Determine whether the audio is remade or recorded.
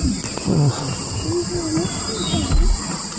recorded